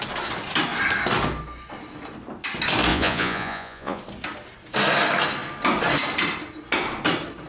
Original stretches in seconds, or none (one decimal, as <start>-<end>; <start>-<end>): 0.0-2.9; 4.0-7.5